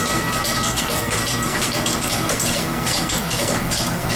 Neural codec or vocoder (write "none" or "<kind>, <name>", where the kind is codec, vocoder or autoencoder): codec, SNAC